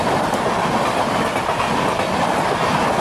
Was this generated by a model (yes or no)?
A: no